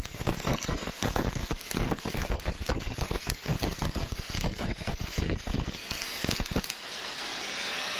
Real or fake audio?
fake